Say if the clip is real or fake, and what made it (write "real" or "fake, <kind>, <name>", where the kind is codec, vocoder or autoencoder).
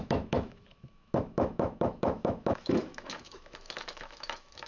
fake, autoencoder, DAC-VAE